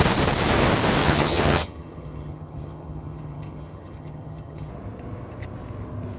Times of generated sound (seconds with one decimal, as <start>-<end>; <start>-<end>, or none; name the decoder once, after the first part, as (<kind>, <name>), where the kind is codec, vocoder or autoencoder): 1.0-4.7 (vocoder, HiFi-GAN)